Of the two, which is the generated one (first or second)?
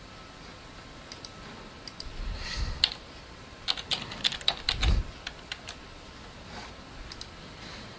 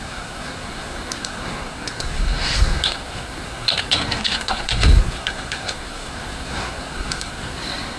second